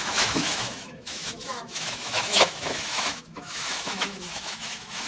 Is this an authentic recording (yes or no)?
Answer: no